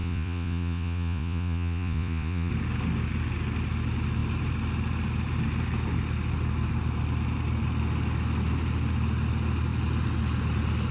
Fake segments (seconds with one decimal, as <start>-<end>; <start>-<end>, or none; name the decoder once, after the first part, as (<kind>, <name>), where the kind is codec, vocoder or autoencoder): 0.0-2.5 (vocoder, Vocos)